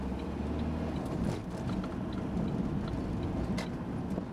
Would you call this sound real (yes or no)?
yes